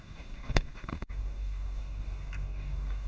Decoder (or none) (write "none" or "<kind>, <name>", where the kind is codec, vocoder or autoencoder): codec, DAC